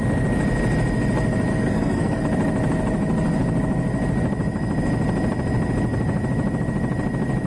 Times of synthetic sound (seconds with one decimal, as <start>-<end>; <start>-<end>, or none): 1.5-2.2